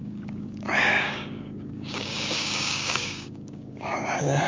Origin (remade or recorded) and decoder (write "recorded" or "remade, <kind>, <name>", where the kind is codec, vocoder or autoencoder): remade, codec, DAC